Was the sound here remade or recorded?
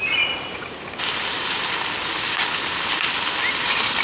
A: remade